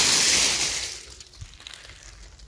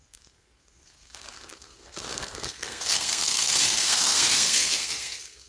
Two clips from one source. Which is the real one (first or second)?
first